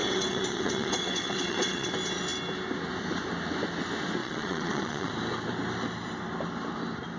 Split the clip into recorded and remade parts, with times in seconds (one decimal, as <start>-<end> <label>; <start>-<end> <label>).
0.0-1.9 remade; 1.9-4.2 recorded; 4.2-5.1 remade; 5.1-7.2 recorded